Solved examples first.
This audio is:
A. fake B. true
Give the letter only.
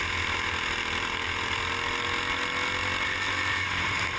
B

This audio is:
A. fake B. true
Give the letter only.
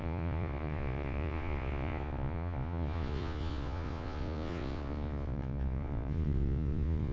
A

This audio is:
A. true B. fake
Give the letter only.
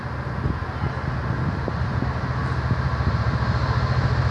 A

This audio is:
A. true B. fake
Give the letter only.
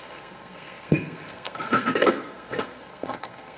B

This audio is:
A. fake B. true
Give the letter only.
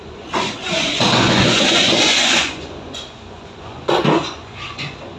A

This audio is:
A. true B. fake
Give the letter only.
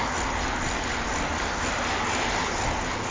A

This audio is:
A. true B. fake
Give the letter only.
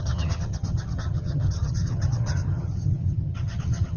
B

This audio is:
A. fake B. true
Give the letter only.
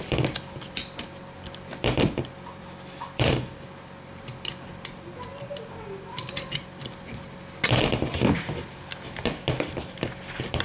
A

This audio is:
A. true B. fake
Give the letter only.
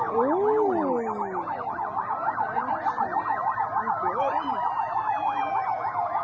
A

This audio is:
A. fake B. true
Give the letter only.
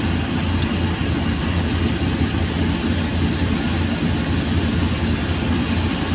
B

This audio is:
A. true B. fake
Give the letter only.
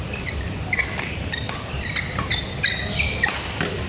B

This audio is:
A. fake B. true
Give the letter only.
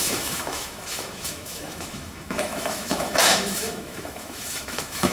A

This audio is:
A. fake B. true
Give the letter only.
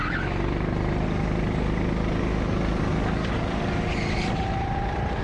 B